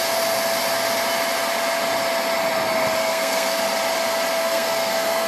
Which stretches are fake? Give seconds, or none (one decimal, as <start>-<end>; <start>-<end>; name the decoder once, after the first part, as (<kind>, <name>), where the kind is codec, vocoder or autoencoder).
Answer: 3.0-3.6 (codec, SNAC); 4.4-5.3

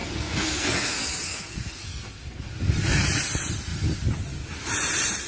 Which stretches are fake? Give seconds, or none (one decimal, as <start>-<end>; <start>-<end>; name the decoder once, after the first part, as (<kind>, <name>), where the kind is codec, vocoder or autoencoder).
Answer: 0.0-2.5 (codec, SNAC)

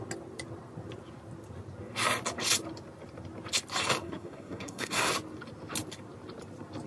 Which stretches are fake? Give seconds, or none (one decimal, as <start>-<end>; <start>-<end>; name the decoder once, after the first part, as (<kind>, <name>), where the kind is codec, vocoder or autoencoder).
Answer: 4.0-5.1 (codec, SNAC)

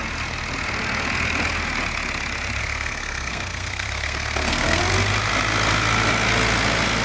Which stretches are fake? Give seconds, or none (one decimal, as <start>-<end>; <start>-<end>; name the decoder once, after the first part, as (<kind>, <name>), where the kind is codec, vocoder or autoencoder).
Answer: 2.6-4.8 (codec, SNAC)

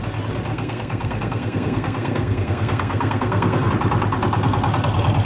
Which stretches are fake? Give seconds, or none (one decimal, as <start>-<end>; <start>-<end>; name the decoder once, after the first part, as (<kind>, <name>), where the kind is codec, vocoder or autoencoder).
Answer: 0.5-3.7 (codec, SNAC)

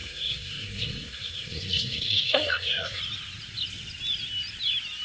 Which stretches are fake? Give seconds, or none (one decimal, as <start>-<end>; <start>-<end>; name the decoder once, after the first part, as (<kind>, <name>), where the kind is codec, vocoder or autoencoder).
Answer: 0.0-3.0 (codec, SNAC)

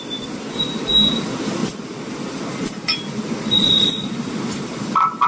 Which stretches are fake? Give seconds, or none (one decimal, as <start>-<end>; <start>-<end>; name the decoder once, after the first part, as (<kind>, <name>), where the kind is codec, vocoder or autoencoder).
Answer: none